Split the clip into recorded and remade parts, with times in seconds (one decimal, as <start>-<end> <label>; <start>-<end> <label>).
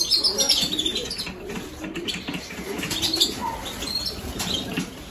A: 0.0-0.9 remade; 0.9-2.3 recorded; 2.3-3.4 remade; 3.4-3.9 recorded; 3.9-5.1 remade